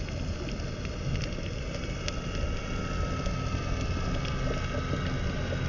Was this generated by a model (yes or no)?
no